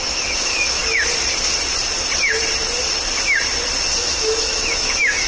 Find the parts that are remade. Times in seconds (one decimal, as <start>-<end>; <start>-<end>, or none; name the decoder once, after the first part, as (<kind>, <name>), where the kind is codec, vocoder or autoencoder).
0.0-0.8 (autoencoder, DAC-VAE); 4.0-5.3